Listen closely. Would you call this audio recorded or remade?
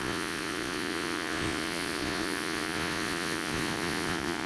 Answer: remade